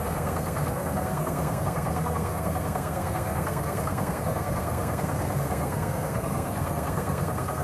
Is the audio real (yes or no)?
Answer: no